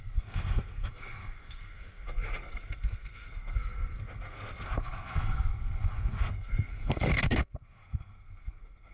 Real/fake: fake